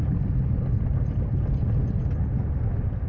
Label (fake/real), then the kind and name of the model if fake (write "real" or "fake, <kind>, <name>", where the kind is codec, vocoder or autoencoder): real